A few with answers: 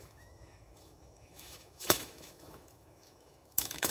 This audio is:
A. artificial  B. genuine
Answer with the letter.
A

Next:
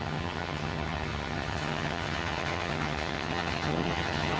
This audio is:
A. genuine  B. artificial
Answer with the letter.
B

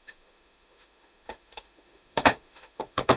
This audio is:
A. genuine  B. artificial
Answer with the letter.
B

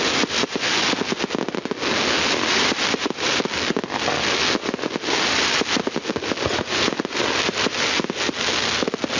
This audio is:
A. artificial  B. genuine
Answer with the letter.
B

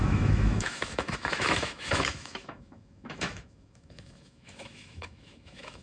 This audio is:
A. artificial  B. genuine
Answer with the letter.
A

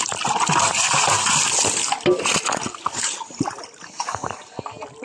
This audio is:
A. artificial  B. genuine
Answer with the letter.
B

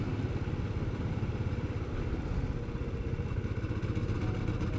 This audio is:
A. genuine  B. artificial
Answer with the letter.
A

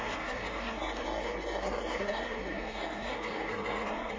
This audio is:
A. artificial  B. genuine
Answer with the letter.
A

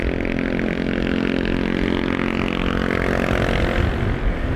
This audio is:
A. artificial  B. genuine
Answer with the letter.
B